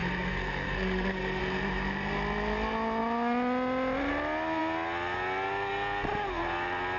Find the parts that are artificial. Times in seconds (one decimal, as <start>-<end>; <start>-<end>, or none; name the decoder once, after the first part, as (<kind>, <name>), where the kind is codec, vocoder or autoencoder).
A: 0.0-1.4 (codec, SNAC)